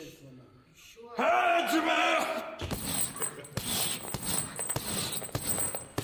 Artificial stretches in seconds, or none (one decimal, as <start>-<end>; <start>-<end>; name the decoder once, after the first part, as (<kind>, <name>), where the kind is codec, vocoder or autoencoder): 0.7-2.6 (vocoder, BigVGAN v2)